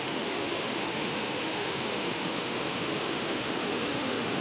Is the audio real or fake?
fake